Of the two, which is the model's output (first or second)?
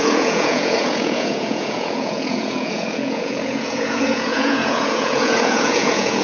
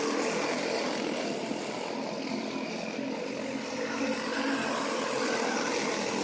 first